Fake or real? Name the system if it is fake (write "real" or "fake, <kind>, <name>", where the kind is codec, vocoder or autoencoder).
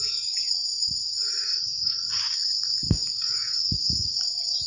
fake, codec, DAC